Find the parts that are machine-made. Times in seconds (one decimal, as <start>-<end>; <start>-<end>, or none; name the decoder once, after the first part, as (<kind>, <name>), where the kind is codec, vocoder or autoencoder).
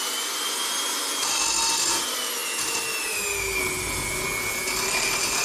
none